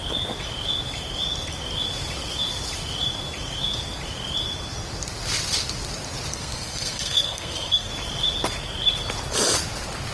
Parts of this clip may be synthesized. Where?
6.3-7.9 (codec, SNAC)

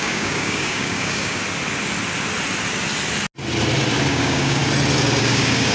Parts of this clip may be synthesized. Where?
0.0-1.4 (codec, DAC); 4.1-4.6; 5.2-5.7

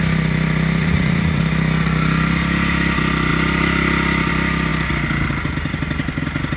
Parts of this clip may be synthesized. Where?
0.8-1.4 (vocoder, Vocos)

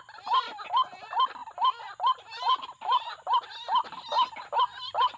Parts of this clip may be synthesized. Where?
none

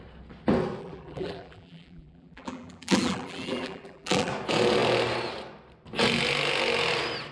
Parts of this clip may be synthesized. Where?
0.8-4.3 (vocoder, BigVGAN v2)